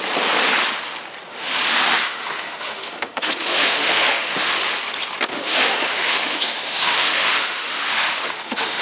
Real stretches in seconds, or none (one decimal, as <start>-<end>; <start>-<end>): 0.0-1.3; 4.5-5.3